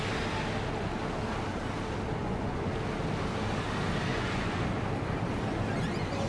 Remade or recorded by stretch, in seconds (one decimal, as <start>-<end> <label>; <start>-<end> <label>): 0.0-2.2 recorded; 2.2-2.7 remade; 2.7-4.1 recorded; 4.1-4.6 remade; 4.6-6.3 recorded